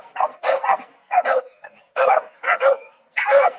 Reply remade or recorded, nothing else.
remade